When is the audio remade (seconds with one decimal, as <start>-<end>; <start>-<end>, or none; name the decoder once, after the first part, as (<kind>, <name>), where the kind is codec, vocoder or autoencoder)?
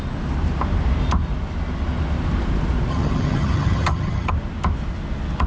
2.9-4.3 (vocoder, HiFi-GAN)